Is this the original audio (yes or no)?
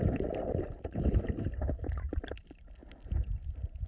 yes